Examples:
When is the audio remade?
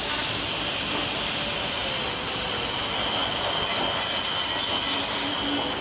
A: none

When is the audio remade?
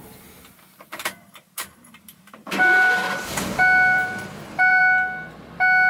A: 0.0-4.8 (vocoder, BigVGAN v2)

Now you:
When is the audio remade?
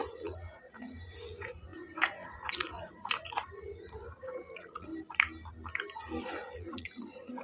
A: 0.0-4.9 (vocoder, Vocos); 6.2-7.4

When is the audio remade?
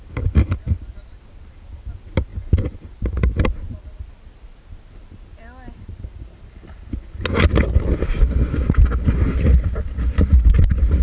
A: none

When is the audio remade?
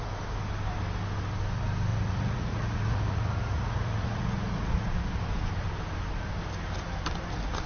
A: 1.9-5.0 (vocoder, Vocos)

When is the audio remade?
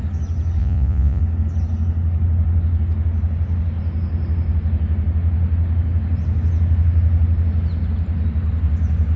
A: 0.6-1.2 (vocoder, Vocos)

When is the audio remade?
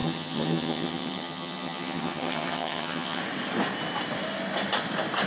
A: 0.0-3.2 (vocoder, HiFi-GAN)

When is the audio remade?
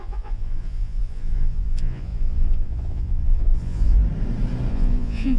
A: 0.0-4.0 (vocoder, Vocos); 4.7-5.4